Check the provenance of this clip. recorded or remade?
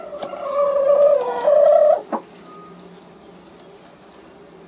recorded